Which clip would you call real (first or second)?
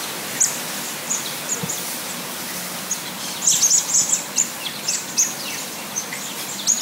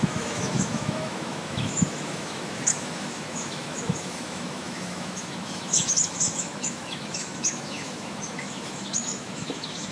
first